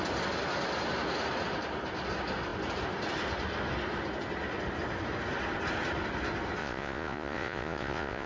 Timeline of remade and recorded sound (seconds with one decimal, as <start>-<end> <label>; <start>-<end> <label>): 0.0-6.6 recorded; 6.6-8.3 remade